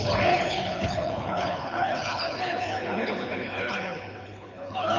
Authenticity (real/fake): fake